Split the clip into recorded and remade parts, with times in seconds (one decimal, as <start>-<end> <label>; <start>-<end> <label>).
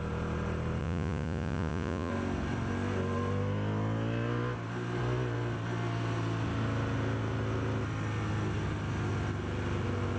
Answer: 0.0-0.8 recorded; 0.8-2.1 remade; 2.1-10.2 recorded